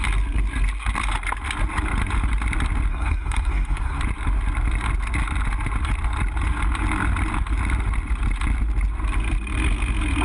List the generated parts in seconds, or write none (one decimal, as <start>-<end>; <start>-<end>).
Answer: 2.9-4.0